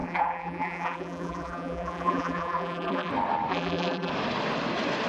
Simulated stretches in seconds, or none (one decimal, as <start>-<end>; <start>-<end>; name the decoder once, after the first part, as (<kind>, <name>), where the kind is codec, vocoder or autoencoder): 0.0-3.1 (vocoder, BigVGAN v2); 3.5-4.1